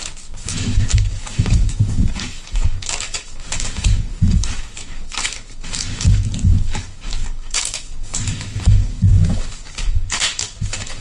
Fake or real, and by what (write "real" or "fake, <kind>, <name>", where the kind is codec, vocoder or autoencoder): fake, codec, DAC